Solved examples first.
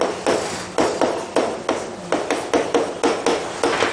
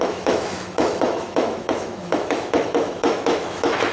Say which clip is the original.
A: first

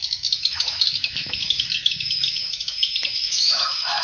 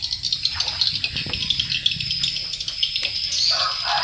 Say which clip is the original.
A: second